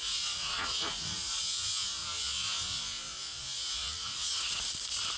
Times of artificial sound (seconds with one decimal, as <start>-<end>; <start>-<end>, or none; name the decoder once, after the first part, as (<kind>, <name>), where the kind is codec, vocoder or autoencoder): 0.0-1.4 (vocoder, Vocos); 3.8-4.7